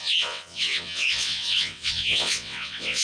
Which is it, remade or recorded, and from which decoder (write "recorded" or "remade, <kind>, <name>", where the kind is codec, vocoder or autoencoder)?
remade, vocoder, WaveNeXt